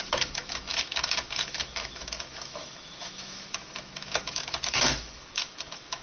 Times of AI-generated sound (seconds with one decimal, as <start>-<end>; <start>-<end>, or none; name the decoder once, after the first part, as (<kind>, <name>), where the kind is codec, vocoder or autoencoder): 0.0-6.0 (autoencoder, DAC-VAE)